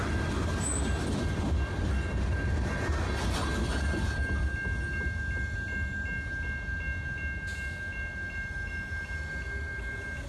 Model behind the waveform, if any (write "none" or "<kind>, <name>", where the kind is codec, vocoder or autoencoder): none